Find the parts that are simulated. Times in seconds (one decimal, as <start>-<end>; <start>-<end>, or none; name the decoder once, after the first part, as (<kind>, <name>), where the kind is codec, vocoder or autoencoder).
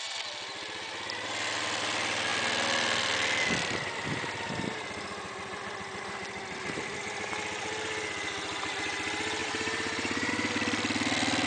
9.4-10.3 (vocoder, BigVGAN v2)